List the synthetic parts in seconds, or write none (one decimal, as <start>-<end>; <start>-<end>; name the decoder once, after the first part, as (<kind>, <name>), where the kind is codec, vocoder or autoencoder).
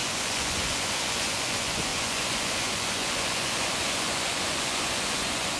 0.0-5.6 (vocoder, Vocos)